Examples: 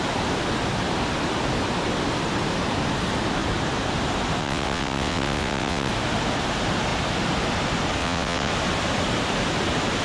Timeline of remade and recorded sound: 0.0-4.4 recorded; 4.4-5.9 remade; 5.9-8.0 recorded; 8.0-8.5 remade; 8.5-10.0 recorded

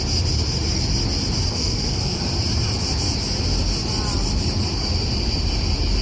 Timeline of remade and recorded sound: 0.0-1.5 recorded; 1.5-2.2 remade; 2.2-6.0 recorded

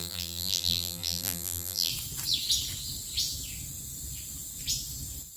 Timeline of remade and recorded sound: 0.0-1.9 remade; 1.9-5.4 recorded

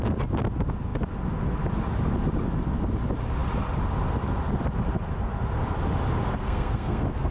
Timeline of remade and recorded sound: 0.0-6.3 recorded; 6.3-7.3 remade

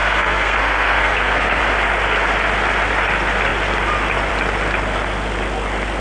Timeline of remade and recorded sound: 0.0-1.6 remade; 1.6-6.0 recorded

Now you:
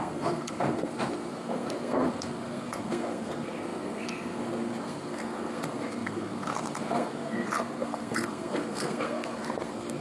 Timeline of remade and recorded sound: 0.0-10.0 remade

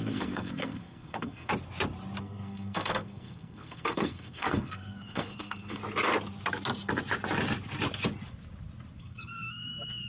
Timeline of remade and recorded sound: 0.0-1.5 remade; 1.5-2.2 recorded; 2.2-5.8 remade; 5.8-9.0 recorded; 9.0-10.1 remade